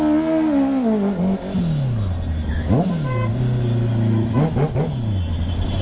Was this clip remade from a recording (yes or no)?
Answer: no